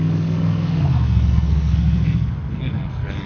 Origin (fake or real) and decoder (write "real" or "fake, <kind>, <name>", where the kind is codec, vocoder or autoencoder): fake, codec, SNAC